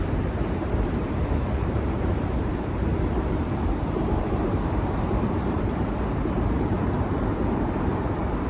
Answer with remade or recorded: remade